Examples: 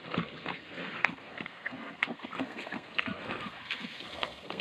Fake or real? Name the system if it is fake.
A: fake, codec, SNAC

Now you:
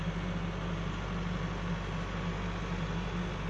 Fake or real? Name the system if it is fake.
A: real